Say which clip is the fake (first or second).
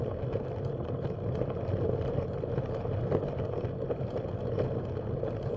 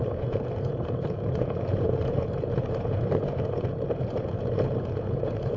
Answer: second